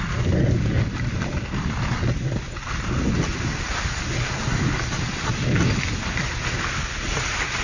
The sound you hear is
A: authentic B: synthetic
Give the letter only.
A